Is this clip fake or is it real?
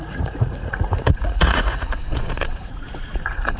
fake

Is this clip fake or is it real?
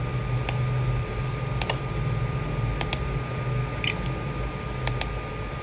real